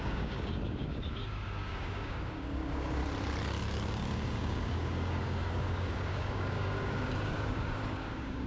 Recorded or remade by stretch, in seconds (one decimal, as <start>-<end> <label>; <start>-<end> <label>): 0.0-3.0 remade; 3.0-3.9 recorded; 3.9-8.5 remade